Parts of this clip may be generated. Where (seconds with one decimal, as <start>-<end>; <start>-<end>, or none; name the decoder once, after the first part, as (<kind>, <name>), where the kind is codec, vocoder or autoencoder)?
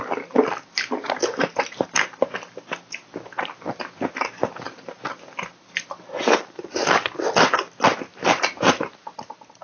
8.1-8.8 (vocoder, BigVGAN v2)